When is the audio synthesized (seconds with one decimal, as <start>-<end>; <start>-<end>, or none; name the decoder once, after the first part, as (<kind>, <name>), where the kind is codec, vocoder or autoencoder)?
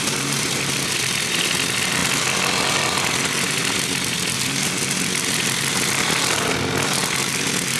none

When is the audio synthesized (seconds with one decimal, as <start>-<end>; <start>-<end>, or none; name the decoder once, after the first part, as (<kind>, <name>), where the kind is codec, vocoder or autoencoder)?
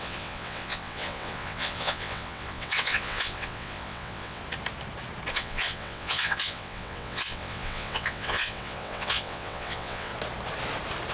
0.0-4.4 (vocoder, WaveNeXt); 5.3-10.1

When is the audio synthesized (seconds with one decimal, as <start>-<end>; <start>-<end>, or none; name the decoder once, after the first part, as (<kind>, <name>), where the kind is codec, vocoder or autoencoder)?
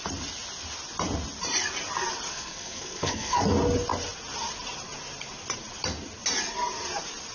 2.3-3.4 (codec, SNAC)